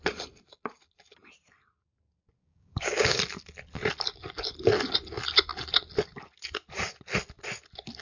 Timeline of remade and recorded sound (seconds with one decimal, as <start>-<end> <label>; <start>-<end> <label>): 0.0-2.4 recorded; 2.4-3.2 remade; 3.2-8.0 recorded